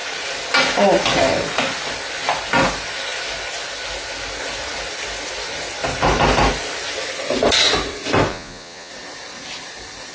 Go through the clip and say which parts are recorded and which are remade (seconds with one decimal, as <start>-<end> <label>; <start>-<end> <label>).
0.0-8.3 recorded; 8.3-8.9 remade; 8.9-10.1 recorded